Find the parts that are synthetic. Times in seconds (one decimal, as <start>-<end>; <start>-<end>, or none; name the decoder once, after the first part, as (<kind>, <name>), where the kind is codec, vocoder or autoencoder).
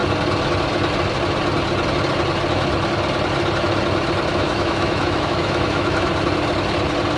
4.3-6.1 (autoencoder, DAC-VAE)